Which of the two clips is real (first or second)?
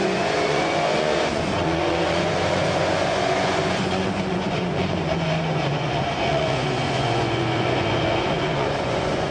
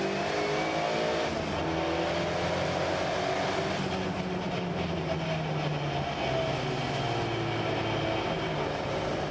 second